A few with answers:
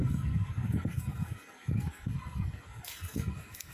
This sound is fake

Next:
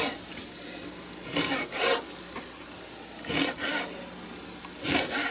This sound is real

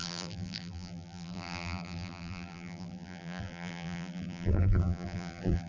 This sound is fake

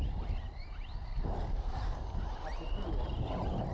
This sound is real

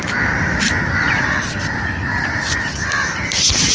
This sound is real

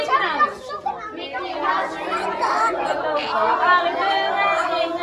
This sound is real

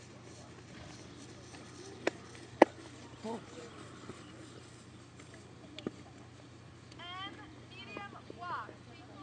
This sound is real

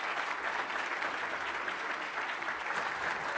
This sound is real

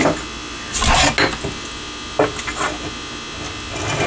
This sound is real